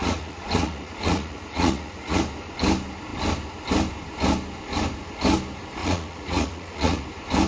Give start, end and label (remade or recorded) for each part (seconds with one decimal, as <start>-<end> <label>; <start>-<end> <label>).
0.0-2.2 remade; 2.2-5.8 recorded; 5.8-7.0 remade; 7.0-7.5 recorded